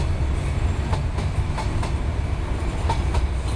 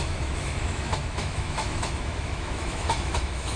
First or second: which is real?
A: first